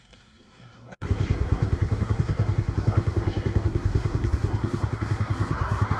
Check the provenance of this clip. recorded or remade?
remade